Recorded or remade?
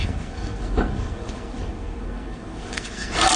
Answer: remade